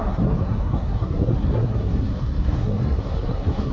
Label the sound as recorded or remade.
remade